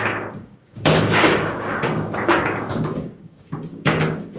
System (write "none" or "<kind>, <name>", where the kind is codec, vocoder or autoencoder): codec, DAC